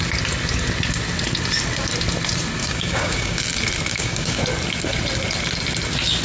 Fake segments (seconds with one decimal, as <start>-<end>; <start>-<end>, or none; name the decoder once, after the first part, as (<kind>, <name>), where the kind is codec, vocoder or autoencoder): 2.6-3.4 (codec, DAC); 3.9-4.4